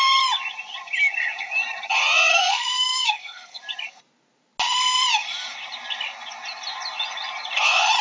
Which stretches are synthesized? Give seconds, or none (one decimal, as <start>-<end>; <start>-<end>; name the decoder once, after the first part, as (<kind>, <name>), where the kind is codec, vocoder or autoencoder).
2.3-3.6 (codec, SNAC)